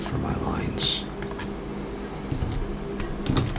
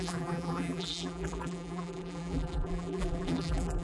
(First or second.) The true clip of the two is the first